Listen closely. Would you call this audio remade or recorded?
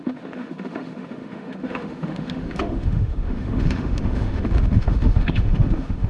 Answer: remade